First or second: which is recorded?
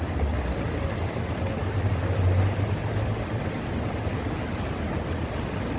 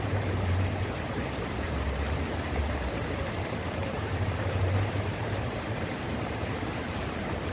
first